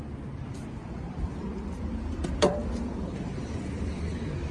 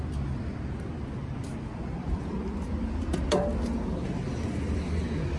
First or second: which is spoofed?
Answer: first